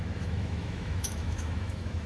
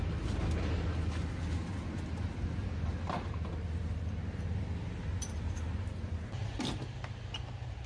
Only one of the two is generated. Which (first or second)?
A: first